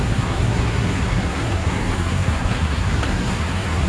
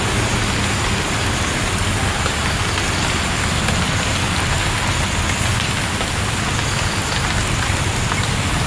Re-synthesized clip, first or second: first